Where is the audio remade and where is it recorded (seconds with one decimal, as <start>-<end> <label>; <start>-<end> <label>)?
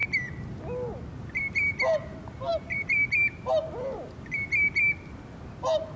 0.0-2.5 recorded; 2.5-3.1 remade; 3.1-6.0 recorded